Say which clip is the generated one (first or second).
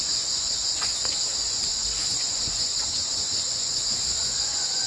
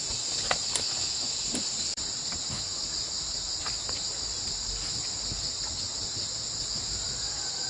first